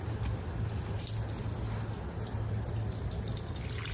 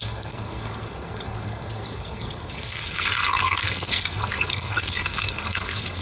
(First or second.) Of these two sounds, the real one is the first